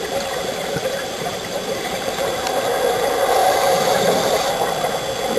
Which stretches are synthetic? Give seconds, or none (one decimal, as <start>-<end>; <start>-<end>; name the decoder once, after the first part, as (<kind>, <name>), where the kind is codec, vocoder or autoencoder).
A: 0.6-2.2 (vocoder, BigVGAN v2); 3.4-4.4